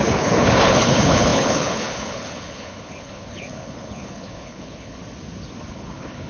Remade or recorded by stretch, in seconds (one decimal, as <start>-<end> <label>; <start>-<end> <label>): 0.0-5.0 remade; 5.0-5.7 recorded; 5.7-6.3 remade